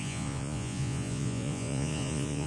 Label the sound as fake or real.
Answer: fake